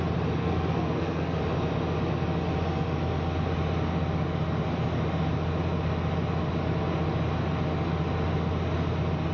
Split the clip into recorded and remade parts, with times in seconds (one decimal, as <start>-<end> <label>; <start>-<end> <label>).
0.0-0.4 recorded; 0.4-1.4 remade; 1.4-9.3 recorded